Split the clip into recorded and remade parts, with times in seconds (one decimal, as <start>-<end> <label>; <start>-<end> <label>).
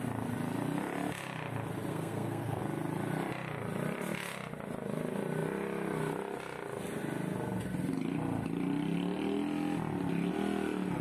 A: 0.0-1.9 recorded; 1.9-2.6 remade; 2.6-11.0 recorded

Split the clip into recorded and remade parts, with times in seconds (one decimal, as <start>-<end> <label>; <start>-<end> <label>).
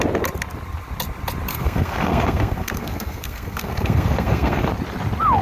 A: 0.0-1.5 recorded; 1.5-4.7 remade; 4.7-5.4 recorded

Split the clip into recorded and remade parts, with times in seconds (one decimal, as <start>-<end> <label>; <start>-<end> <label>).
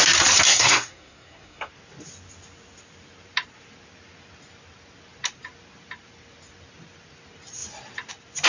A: 0.0-0.5 recorded; 0.5-1.7 remade; 1.7-8.5 recorded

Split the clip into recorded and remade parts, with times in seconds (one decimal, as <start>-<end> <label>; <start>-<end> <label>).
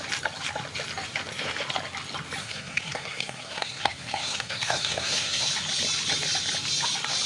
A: 0.0-2.4 recorded; 2.4-5.5 remade; 5.5-7.3 recorded